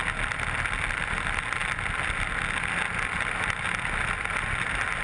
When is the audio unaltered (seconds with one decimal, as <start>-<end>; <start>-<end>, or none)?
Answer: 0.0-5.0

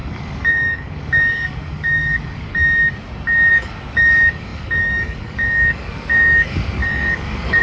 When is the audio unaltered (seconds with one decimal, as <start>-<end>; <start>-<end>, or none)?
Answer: 2.6-3.5

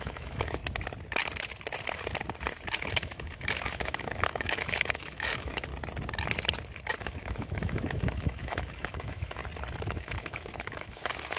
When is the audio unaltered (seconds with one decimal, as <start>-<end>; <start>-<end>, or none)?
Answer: 0.6-2.9; 5.7-7.0; 9.4-9.9